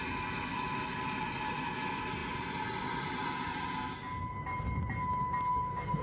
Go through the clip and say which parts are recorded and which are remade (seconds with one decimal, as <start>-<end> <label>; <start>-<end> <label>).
0.0-6.0 recorded

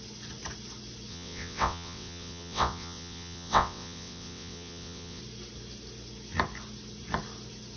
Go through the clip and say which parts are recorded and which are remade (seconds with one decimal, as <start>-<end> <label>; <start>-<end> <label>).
0.0-1.1 recorded; 1.1-5.2 remade; 5.2-7.8 recorded

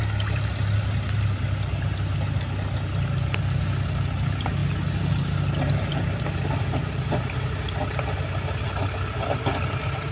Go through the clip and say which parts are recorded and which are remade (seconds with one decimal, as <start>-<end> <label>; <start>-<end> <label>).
0.0-10.1 recorded